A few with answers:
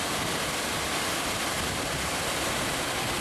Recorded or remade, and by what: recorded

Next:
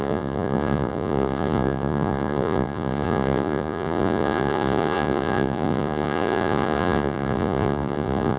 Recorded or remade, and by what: remade, vocoder, Vocos